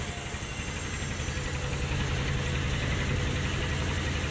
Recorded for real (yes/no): yes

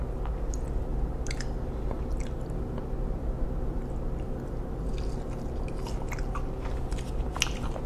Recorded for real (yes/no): yes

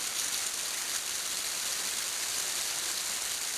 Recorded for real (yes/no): yes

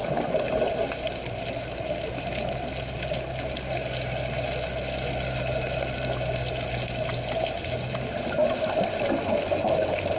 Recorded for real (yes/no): yes